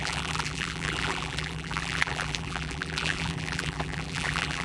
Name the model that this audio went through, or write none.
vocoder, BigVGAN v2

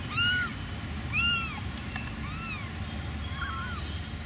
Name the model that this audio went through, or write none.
none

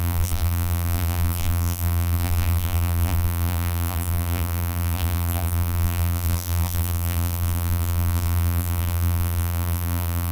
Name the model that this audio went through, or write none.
vocoder, BigVGAN v2